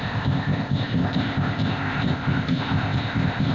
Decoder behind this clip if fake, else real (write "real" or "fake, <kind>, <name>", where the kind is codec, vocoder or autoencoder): fake, codec, ZipCodec